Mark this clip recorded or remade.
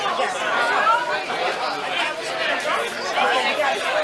recorded